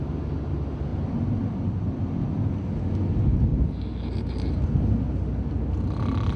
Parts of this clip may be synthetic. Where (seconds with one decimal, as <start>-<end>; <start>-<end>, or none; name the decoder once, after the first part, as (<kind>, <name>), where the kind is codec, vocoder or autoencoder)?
none